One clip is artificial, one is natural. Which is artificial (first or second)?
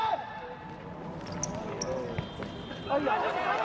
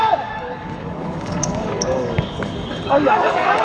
second